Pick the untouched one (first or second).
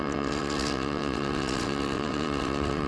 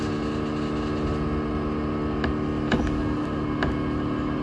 second